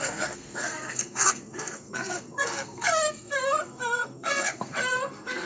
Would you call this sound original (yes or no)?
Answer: no